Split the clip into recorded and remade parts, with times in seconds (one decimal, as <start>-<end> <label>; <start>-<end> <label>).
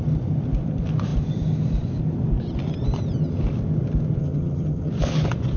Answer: 0.0-4.2 recorded; 4.2-4.9 remade; 4.9-5.6 recorded